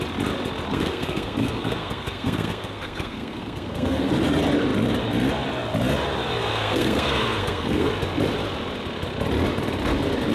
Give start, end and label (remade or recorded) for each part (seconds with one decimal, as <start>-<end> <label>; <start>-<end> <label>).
0.0-0.7 recorded; 0.7-4.1 remade; 4.1-6.5 recorded; 6.5-7.9 remade; 7.9-10.3 recorded

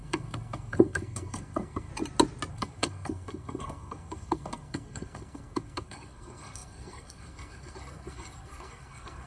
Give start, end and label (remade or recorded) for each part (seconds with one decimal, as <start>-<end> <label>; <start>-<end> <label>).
0.0-1.9 remade; 1.9-2.5 recorded; 2.5-9.3 remade

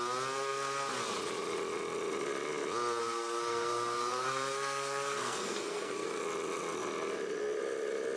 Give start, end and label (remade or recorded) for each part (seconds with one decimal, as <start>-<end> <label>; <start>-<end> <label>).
0.0-3.0 recorded; 3.0-6.2 remade; 6.2-8.2 recorded

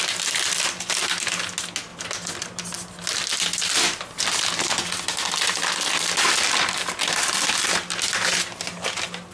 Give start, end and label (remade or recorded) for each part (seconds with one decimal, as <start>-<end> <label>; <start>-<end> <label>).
0.0-9.3 recorded

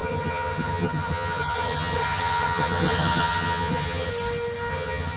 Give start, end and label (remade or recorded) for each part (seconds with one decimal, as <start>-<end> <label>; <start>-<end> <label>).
0.0-4.1 remade; 4.1-4.7 recorded; 4.7-5.2 remade

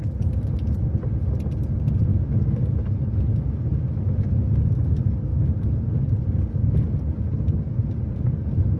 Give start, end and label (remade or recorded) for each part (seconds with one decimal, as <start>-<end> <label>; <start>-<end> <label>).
0.0-8.8 recorded

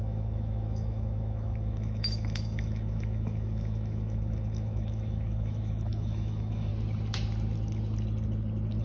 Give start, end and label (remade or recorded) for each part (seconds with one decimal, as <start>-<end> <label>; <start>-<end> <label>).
0.0-6.7 remade; 6.7-8.8 recorded

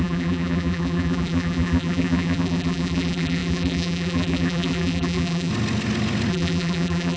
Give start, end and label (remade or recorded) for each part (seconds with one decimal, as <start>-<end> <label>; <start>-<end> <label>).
0.0-5.5 remade; 5.5-6.3 recorded; 6.3-7.2 remade